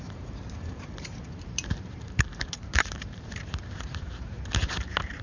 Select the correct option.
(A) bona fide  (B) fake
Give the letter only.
B